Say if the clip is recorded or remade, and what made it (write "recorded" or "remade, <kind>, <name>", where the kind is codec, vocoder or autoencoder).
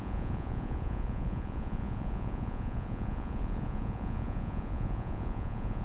remade, vocoder, Vocos